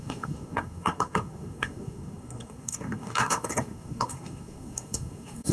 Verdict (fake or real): fake